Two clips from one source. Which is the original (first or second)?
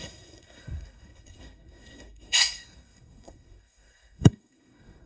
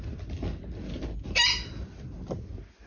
second